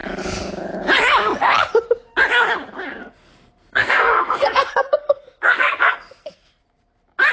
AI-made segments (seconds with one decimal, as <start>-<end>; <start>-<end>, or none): 3.0-6.6